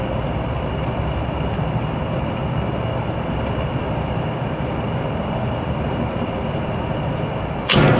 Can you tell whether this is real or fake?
fake